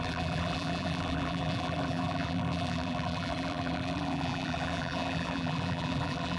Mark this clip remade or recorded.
remade